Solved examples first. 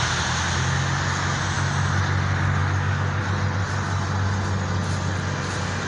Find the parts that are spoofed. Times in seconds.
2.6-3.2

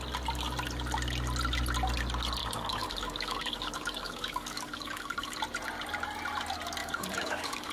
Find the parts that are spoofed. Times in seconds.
2.4-5.4; 6.8-7.7

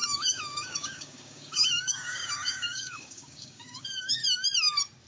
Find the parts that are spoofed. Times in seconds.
0.0-4.2

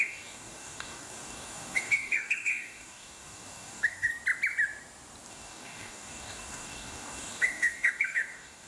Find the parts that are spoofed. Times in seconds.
0.0-4.1; 5.3-8.7

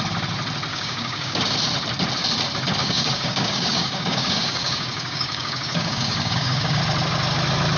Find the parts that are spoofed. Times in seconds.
0.7-1.4; 2.8-6.8

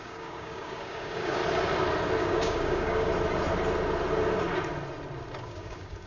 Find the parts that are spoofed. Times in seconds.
0.0-1.4; 2.2-3.1; 5.4-6.1

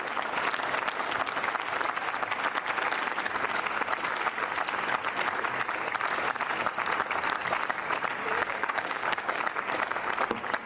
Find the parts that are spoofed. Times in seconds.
8.2-9.4

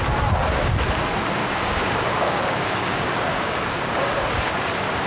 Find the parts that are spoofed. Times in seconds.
1.4-4.5